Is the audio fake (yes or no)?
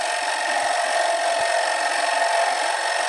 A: no